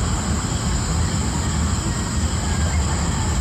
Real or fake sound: real